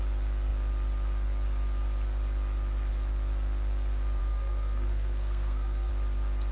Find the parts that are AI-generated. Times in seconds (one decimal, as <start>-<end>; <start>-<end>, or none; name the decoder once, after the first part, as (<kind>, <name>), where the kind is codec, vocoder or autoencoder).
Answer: 4.2-5.9 (codec, SNAC)